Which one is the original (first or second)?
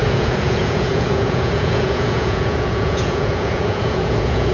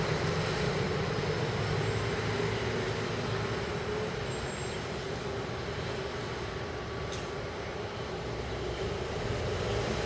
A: second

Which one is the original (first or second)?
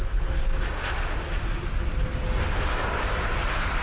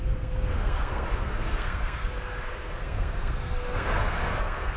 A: first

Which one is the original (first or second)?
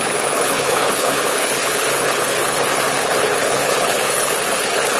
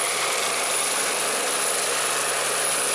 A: second